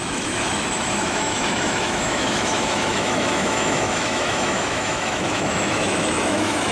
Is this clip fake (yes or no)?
yes